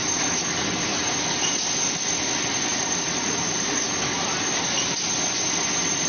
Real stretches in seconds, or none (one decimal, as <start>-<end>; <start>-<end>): 0.0-2.7; 3.8-6.1